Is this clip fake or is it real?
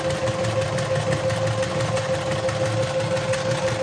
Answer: real